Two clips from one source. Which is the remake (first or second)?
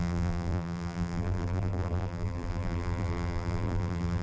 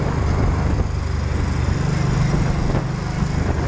first